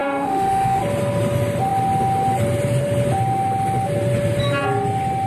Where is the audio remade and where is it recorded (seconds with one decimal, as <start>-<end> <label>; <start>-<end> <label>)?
0.0-0.8 remade; 0.8-5.3 recorded